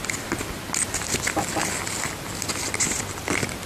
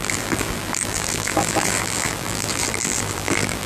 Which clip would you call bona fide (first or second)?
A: first